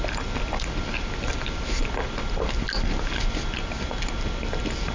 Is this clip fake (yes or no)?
no